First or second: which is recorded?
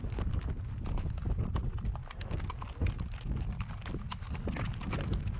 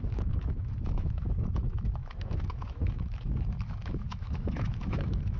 first